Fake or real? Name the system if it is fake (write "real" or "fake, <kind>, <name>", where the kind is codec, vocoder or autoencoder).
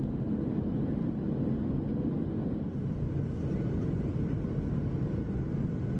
real